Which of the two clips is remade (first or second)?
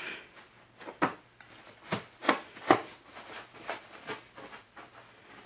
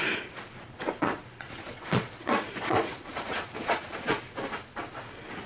second